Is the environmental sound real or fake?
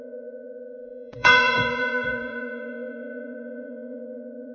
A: fake